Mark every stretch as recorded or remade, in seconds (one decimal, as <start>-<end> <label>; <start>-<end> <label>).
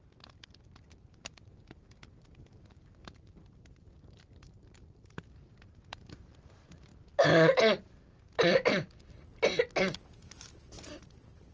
0.0-6.9 remade; 6.9-11.0 recorded; 11.0-11.5 remade